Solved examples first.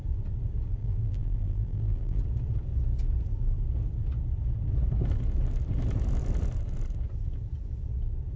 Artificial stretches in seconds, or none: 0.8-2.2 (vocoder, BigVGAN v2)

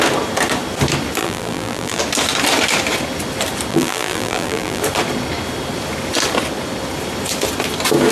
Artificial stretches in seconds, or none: 1.2-2.0 (vocoder, BigVGAN v2); 3.7-4.8

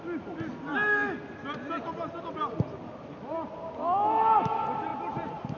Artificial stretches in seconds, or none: none

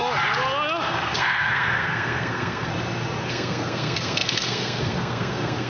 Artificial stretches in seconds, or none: 0.9-2.7 (codec, SNAC); 3.3-5.7